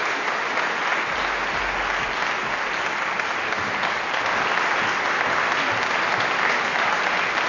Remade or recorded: recorded